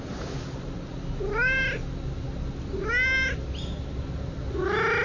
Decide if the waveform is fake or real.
real